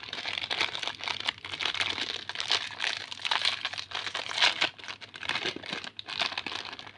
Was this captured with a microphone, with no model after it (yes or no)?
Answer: yes